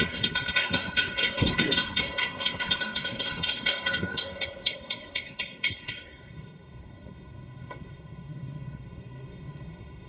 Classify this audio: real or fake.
fake